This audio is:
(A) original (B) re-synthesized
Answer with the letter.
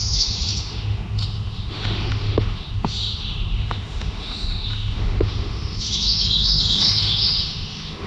B